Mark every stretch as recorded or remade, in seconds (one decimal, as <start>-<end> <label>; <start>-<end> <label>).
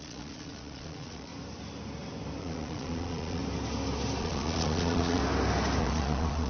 0.0-1.3 remade; 1.3-2.4 recorded; 2.4-3.4 remade; 3.4-4.2 recorded; 4.2-5.2 remade; 5.2-5.8 recorded; 5.8-6.5 remade